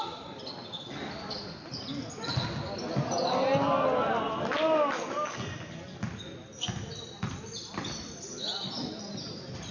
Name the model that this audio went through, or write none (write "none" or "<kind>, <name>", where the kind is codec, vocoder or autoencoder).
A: none